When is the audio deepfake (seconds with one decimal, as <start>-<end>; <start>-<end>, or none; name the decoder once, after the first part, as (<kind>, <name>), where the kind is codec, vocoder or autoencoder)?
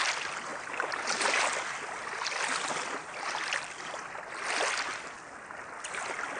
none